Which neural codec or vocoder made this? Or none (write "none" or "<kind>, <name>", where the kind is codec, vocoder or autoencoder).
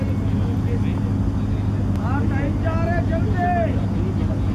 none